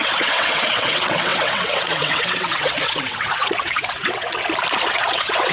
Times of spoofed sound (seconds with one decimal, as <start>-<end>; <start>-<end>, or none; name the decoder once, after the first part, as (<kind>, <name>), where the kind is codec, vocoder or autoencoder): 0.0-4.3 (vocoder, WaveNeXt); 4.9-5.5